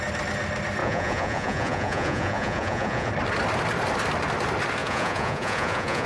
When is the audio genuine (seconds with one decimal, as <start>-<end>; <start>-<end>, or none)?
0.0-0.8; 3.1-4.8